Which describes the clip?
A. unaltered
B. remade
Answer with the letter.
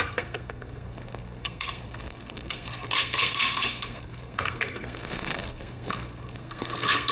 B